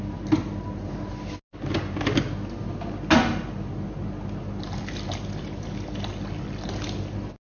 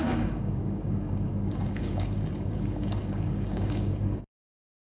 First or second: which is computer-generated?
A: second